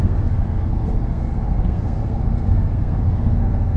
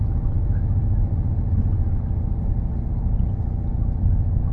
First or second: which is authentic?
second